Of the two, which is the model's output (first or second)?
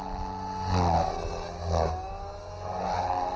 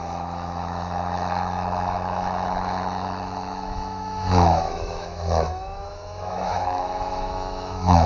second